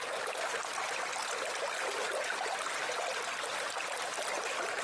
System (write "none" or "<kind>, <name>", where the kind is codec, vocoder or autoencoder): none